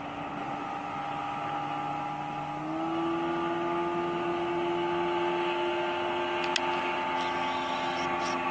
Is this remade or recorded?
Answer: recorded